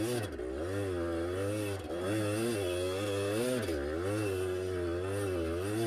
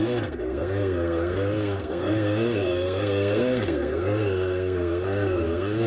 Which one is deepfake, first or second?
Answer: second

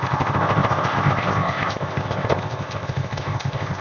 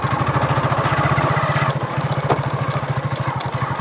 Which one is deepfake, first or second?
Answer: first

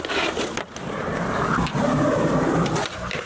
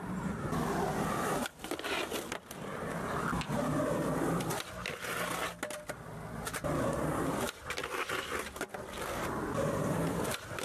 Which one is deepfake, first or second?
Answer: first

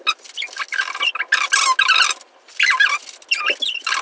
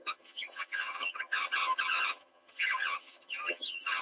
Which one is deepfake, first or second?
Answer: second